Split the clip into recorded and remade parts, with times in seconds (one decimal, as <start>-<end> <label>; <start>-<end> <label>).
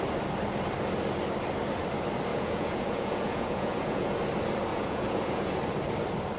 0.0-2.3 recorded; 2.3-4.1 remade; 4.1-4.7 recorded; 4.7-5.6 remade; 5.6-6.4 recorded